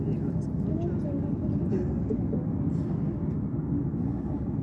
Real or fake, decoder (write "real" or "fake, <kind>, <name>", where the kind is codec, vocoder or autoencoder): real